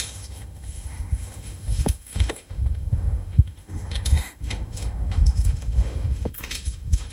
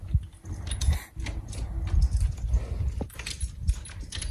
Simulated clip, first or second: first